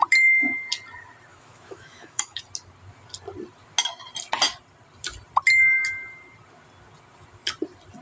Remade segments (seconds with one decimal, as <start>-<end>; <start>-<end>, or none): 1.3-2.4